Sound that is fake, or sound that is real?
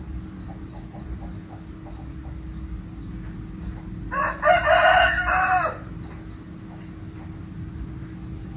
real